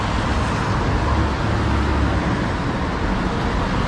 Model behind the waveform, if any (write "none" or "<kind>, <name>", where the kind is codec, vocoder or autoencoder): none